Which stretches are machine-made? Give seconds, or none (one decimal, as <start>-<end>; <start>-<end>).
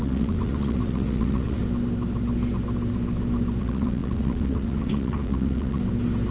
0.0-1.6; 3.6-5.8